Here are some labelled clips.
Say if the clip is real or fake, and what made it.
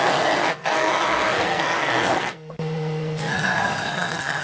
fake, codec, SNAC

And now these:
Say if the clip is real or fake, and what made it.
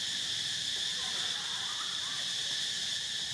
real